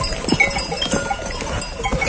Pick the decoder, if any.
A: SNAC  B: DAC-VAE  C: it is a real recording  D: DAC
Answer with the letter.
C